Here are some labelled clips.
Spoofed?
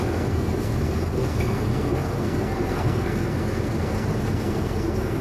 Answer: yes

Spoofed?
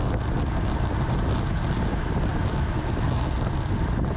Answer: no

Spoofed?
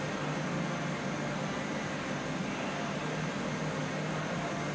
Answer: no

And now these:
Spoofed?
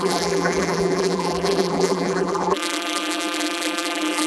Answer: yes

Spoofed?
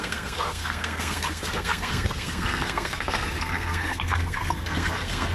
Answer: yes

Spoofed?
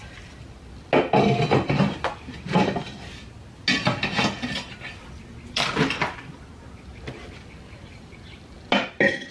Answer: no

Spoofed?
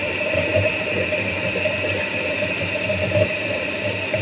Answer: yes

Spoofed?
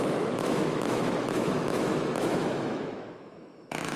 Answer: yes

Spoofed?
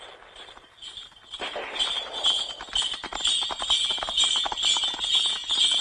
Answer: no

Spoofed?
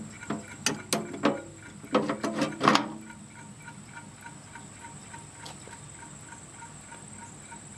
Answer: no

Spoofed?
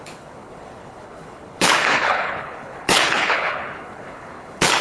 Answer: yes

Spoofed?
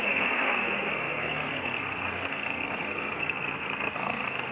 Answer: yes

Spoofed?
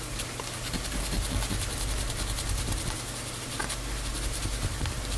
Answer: no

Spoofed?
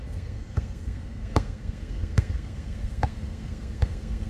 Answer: yes